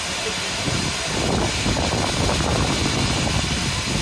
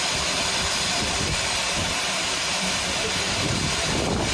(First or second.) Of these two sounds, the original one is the first